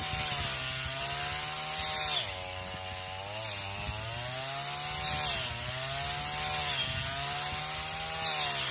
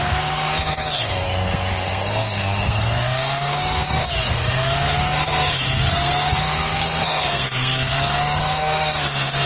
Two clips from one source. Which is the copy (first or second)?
second